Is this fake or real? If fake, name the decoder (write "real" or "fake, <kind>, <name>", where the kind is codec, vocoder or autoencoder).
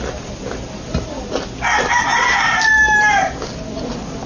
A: real